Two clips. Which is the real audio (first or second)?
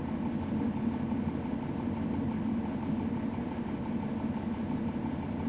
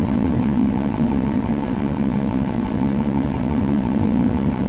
first